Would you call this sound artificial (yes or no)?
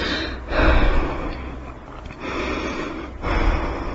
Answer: no